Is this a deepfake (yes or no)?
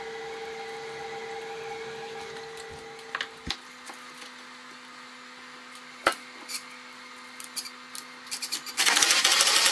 no